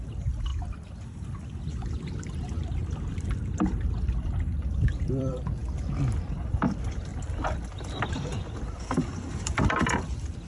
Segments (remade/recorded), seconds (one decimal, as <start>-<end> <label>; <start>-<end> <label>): 0.0-0.5 remade; 0.5-1.7 recorded; 1.7-5.6 remade; 5.6-6.3 recorded; 6.3-7.1 remade; 7.1-8.1 recorded; 8.1-10.5 remade

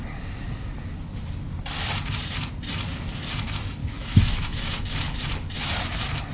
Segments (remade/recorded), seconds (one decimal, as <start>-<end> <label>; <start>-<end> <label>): 0.0-3.8 recorded; 3.8-5.0 remade; 5.0-6.3 recorded

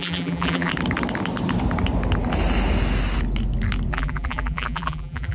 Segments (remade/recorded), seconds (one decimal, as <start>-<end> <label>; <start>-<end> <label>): 0.0-0.7 remade; 0.7-3.9 recorded; 3.9-5.3 remade

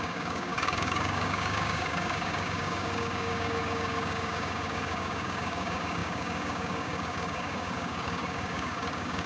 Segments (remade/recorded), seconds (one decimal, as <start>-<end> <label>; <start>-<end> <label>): 0.0-9.3 remade

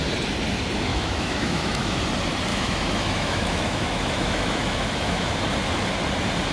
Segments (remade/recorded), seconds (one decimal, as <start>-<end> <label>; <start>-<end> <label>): 0.0-0.9 recorded; 0.9-2.0 remade; 2.0-2.5 recorded; 2.5-5.4 remade; 5.4-6.5 recorded

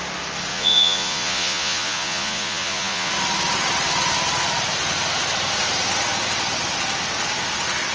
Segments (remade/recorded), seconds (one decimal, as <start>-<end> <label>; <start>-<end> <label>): 0.0-0.5 recorded; 0.5-3.1 remade; 3.1-7.9 recorded

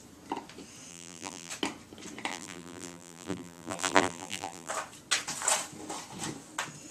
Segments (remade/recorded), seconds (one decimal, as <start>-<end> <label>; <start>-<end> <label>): 0.0-0.9 recorded; 0.9-1.5 remade; 1.5-2.3 recorded; 2.3-4.7 remade; 4.7-6.9 recorded